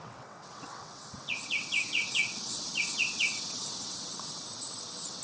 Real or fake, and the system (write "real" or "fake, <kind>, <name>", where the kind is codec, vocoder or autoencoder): fake, vocoder, WaveNeXt